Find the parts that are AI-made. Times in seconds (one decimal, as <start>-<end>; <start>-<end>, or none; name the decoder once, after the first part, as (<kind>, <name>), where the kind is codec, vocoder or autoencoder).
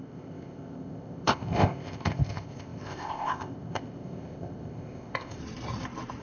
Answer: 0.0-5.4 (codec, ZipCodec)